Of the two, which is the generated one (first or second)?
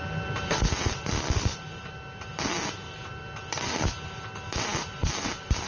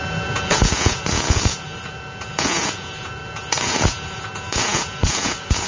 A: second